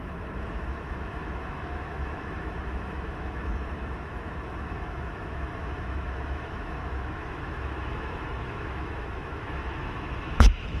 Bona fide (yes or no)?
no